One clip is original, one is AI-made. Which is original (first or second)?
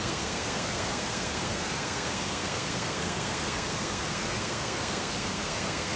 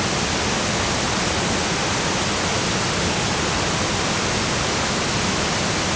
second